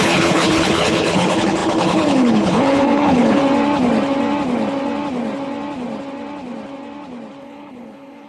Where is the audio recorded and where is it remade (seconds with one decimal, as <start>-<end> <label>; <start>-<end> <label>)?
0.0-3.4 remade; 3.4-7.4 recorded; 7.4-8.3 remade